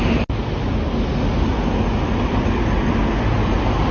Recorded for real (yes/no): yes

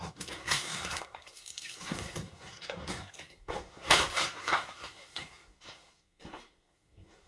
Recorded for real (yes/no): no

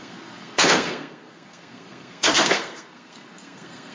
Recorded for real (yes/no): no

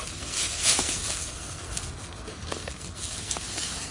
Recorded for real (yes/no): no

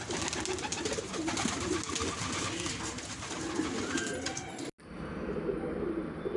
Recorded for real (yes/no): yes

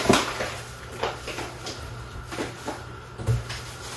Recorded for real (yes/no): yes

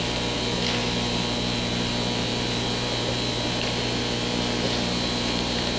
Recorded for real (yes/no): yes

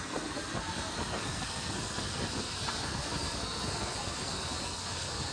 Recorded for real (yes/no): no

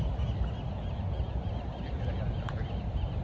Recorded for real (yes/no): yes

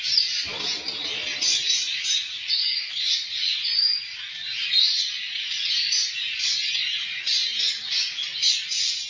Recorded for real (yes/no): yes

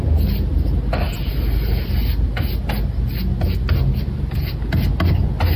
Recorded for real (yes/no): yes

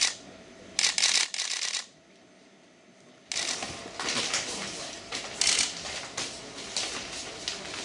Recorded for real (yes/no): yes